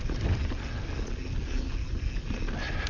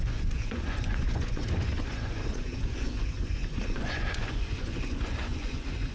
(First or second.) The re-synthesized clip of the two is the second